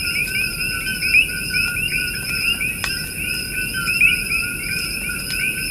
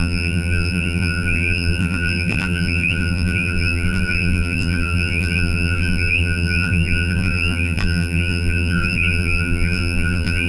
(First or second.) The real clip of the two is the first